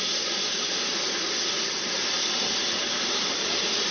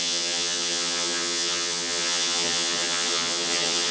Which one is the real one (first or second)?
first